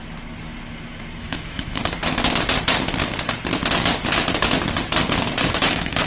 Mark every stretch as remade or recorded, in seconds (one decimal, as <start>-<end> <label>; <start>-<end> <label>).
0.0-1.2 recorded; 1.2-1.8 remade; 1.8-5.5 recorded; 5.5-6.1 remade